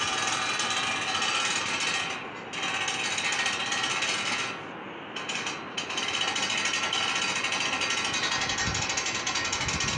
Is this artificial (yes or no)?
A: no